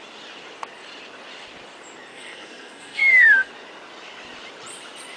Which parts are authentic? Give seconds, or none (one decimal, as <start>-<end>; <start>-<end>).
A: 0.0-2.1; 3.5-5.2